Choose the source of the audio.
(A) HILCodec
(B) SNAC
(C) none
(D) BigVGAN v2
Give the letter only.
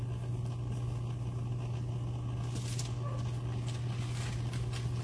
C